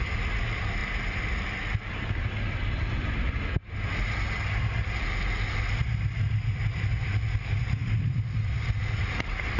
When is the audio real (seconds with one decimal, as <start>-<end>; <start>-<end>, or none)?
0.0-9.6